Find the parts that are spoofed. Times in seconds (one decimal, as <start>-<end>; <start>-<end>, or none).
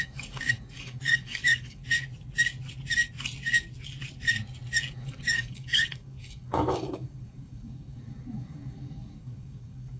0.0-1.8; 4.9-10.0